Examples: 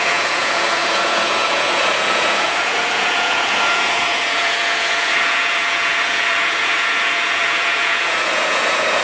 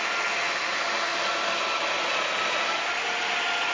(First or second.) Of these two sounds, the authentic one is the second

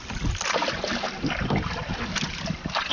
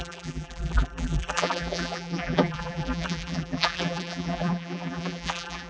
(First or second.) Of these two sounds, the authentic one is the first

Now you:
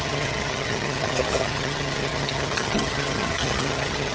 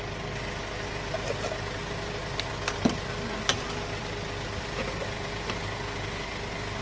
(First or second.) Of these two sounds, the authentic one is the second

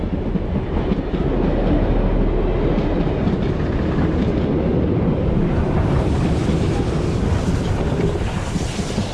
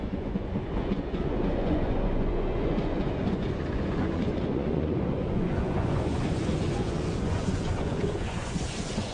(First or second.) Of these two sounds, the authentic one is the first